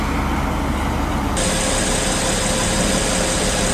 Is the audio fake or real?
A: real